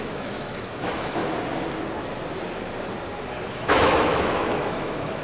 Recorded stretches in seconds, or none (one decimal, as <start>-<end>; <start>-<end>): 1.2-3.5